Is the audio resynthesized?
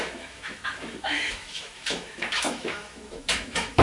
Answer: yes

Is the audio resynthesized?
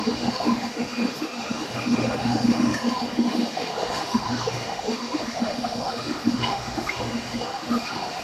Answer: yes